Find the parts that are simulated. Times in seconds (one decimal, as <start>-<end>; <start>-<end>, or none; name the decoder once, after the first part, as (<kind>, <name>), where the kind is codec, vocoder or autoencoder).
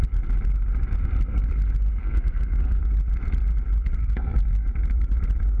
2.0-2.8 (codec, SNAC); 4.0-4.7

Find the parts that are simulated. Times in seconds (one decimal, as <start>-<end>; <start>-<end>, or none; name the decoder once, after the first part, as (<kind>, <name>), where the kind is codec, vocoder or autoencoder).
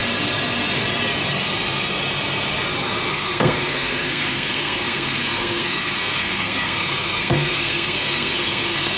3.1-9.0 (codec, SNAC)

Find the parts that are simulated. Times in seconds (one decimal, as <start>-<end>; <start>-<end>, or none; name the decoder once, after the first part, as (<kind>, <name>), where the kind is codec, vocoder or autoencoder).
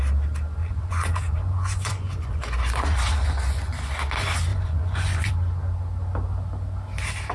0.6-3.9 (vocoder, Vocos); 4.5-5.3